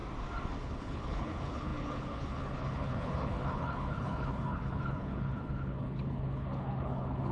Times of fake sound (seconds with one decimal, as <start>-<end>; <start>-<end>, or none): 0.6-7.3